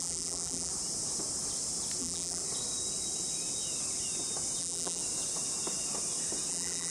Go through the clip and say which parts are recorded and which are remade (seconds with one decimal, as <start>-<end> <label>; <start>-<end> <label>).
0.0-0.7 remade; 0.7-2.0 recorded; 2.0-2.4 remade; 2.4-4.6 recorded; 4.6-5.0 remade; 5.0-6.5 recorded; 6.5-6.9 remade